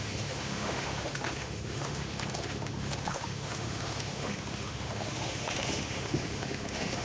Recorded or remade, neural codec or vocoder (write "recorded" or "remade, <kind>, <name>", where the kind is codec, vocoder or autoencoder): remade, autoencoder, DAC-VAE